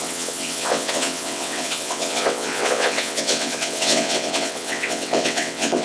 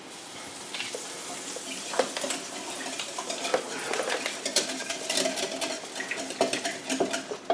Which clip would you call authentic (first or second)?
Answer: second